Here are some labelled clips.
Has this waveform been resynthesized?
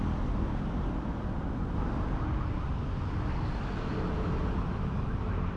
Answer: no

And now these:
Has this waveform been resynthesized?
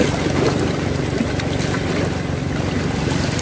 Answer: no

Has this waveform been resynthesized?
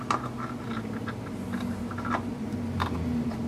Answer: no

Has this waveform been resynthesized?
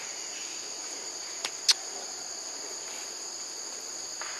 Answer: no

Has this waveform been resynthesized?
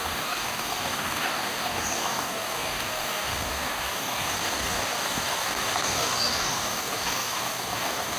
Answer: yes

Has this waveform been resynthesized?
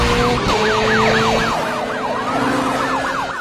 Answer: no